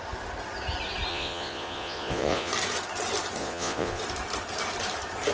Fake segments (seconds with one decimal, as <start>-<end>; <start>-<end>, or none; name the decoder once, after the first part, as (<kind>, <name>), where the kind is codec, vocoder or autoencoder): 1.1-2.5 (vocoder, Vocos); 3.4-4.0